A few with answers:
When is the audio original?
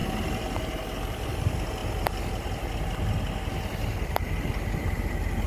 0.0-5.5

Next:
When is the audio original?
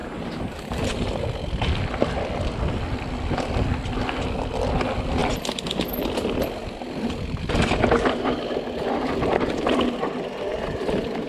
0.8-11.3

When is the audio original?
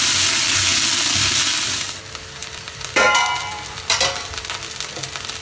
0.0-2.4; 3.8-5.4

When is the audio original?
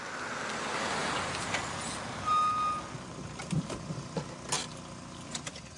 0.0-5.8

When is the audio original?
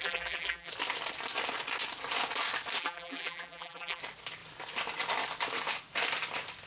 0.7-2.8; 4.0-6.7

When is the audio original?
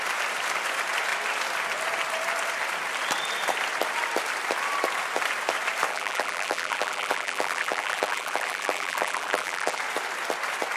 0.0-5.9; 9.8-10.8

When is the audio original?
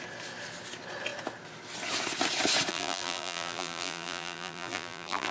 0.0-2.7